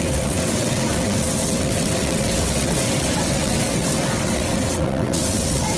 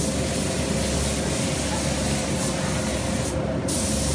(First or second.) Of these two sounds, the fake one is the first